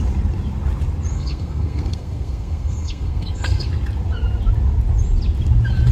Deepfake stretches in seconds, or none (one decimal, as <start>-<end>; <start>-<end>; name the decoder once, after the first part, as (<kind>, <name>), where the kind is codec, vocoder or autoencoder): 1.1-3.7 (codec, SNAC)